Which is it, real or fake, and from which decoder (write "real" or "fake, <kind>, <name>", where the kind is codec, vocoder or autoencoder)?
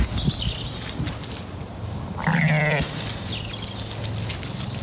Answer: real